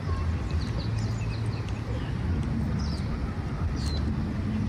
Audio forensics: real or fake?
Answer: real